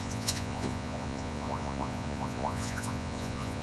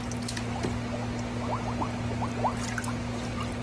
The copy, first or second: first